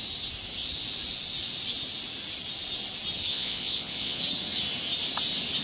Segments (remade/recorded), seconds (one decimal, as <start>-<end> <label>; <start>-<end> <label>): 0.0-3.3 recorded; 3.3-4.2 remade; 4.2-5.6 recorded